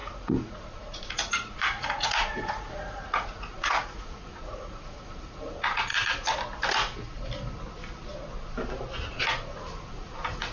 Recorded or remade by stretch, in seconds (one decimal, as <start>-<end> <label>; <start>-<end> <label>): 0.0-5.9 remade; 5.9-9.1 recorded; 9.1-10.5 remade

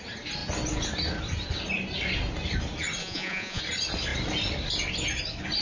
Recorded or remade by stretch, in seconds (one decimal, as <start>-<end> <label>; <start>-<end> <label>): 0.0-3.0 recorded; 3.0-3.6 remade; 3.6-5.6 recorded

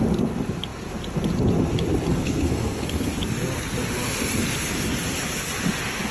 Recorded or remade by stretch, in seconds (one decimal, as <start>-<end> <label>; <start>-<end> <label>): 0.0-2.1 recorded; 2.1-3.1 remade; 3.1-6.1 recorded